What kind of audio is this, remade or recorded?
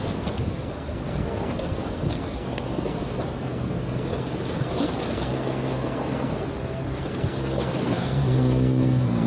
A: remade